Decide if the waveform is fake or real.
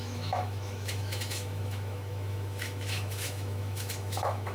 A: fake